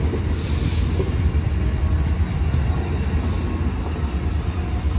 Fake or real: real